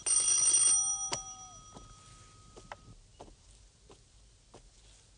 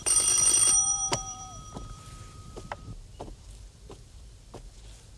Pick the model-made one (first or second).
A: second